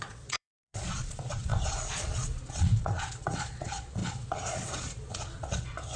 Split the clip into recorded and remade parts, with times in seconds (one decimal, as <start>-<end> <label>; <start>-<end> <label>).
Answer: 0.0-6.0 remade